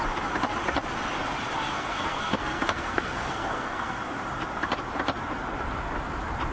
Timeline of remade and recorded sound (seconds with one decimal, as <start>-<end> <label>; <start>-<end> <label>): 0.0-1.7 recorded; 1.7-4.0 remade; 4.0-6.5 recorded